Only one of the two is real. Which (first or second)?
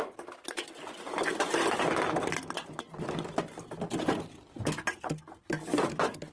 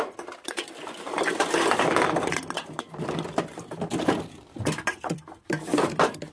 first